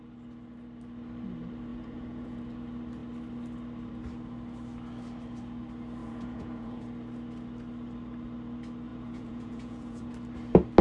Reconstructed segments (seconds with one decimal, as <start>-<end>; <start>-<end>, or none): 1.7-2.4; 6.0-6.8; 8.9-10.1